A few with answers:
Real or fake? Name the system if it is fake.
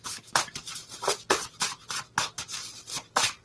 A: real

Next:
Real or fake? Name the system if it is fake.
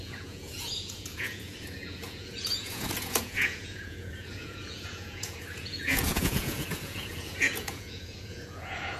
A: fake, vocoder, Vocos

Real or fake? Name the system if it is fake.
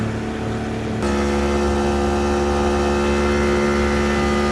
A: real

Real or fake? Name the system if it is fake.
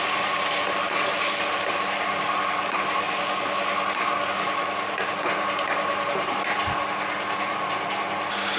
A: real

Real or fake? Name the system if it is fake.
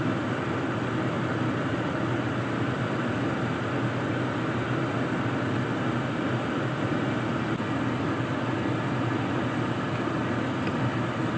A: real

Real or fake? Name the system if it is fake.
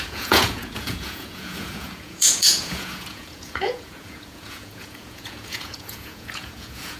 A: fake, vocoder, Vocos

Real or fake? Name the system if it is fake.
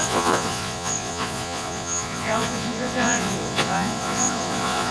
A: fake, vocoder, Vocos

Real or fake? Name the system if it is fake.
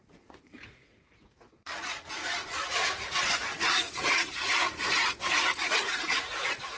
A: fake, vocoder, Vocos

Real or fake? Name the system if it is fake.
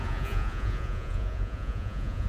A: fake, vocoder, Vocos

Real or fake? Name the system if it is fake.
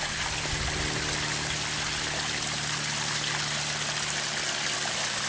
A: real